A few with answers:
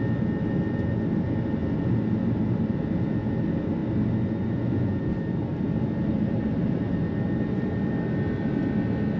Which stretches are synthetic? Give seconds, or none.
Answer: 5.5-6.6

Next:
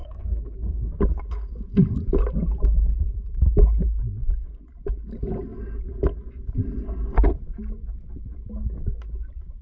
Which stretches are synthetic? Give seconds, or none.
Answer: 0.0-0.9

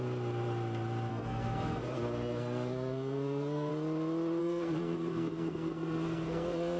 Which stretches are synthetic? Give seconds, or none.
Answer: 1.1-3.7; 4.4-6.8